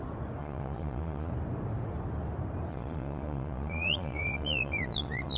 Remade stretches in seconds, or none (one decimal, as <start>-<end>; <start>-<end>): 0.4-1.3; 2.7-5.4